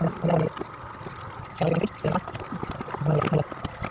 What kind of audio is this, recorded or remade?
recorded